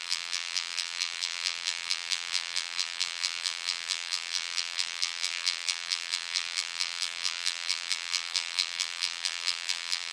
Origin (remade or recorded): remade